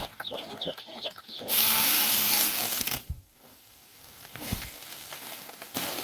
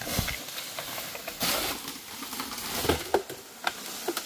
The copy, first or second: first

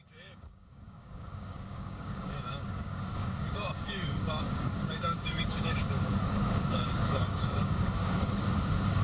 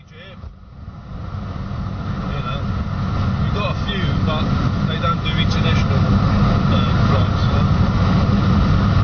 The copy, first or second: first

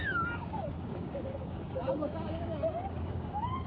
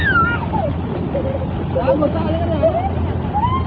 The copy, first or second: first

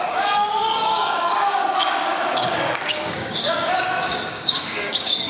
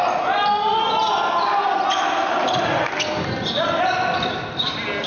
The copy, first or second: first